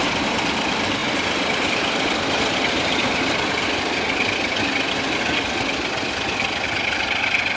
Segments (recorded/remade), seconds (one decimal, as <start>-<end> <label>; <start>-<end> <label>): 0.0-7.6 recorded